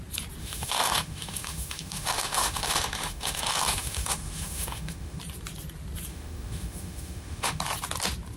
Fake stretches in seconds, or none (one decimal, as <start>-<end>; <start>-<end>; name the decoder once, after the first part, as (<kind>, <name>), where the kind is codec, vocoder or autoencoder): 0.4-5.2 (autoencoder, DAC-VAE); 6.1-7.6